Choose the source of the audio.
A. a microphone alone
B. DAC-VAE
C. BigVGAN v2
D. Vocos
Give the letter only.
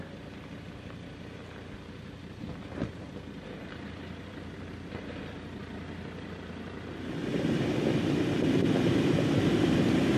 C